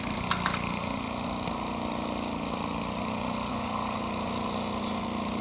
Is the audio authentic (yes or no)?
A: yes